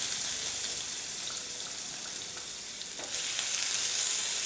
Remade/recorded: recorded